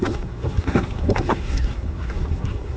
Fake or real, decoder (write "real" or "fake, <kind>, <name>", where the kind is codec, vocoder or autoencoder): fake, codec, SNAC